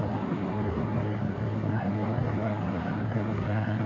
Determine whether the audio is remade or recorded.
remade